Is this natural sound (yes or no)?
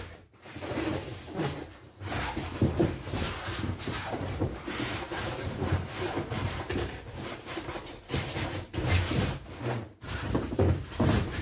no